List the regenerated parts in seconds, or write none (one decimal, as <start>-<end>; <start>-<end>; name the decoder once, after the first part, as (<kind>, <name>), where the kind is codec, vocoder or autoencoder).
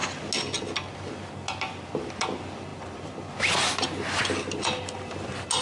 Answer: none